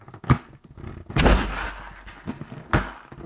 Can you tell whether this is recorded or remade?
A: recorded